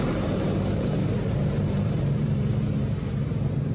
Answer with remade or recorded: remade